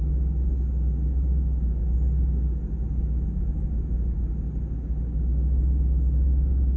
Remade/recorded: recorded